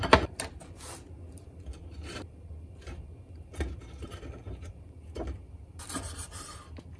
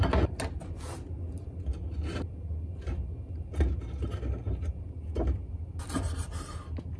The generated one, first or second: first